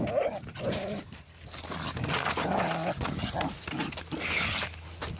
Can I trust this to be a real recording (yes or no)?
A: yes